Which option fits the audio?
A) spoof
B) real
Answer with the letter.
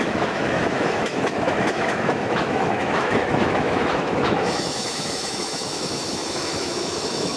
A